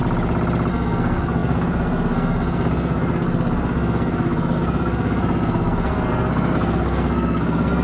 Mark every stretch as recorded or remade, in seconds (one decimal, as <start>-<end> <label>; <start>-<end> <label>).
0.0-0.7 recorded; 0.7-7.8 remade